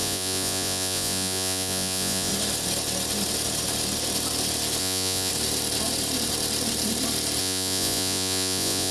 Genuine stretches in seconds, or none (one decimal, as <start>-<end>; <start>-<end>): 2.3-4.8; 5.3-7.4